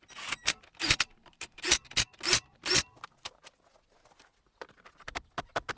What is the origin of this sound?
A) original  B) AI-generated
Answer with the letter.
A